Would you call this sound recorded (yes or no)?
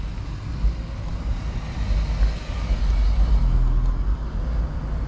yes